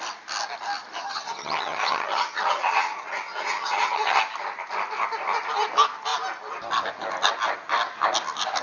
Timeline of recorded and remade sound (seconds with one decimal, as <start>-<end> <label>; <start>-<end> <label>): 0.0-1.0 recorded; 1.0-4.2 remade; 4.2-8.6 recorded

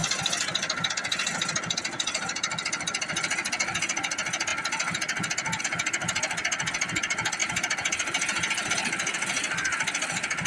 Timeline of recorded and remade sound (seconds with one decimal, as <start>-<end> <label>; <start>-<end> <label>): 0.0-7.4 recorded; 7.4-8.7 remade; 8.7-10.5 recorded